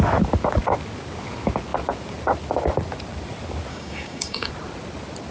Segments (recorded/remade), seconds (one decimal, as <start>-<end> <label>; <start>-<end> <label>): 0.0-3.7 recorded; 3.7-4.5 remade; 4.5-5.3 recorded